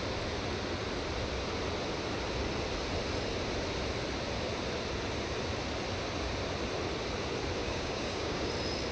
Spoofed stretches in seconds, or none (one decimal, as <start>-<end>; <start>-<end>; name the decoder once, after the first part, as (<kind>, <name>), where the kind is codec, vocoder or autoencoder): 7.6-8.5 (codec, DAC)